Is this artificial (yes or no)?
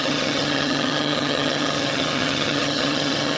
yes